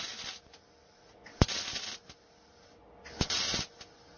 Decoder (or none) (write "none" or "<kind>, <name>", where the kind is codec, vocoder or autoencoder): none